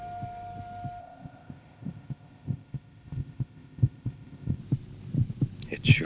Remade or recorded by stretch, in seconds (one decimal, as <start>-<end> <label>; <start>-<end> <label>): 0.0-1.0 recorded; 1.0-4.6 remade; 4.6-6.0 recorded